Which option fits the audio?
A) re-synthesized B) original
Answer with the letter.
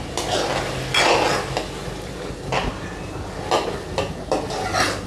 B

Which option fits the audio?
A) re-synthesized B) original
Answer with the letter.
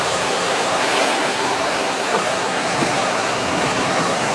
A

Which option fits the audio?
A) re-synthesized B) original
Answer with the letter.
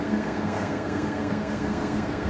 A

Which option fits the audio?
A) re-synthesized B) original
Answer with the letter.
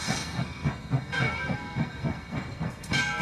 A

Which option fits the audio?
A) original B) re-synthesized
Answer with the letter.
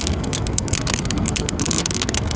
B